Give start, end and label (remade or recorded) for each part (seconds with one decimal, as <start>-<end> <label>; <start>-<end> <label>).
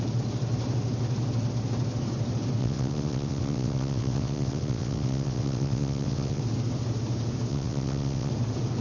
0.0-2.6 recorded; 2.6-6.4 remade; 6.4-7.5 recorded; 7.5-8.3 remade; 8.3-8.8 recorded